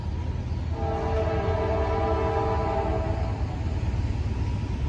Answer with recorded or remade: recorded